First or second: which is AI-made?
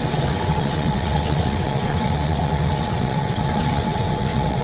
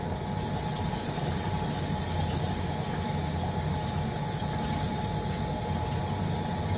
first